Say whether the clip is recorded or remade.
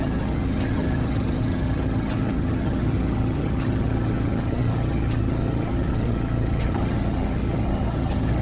remade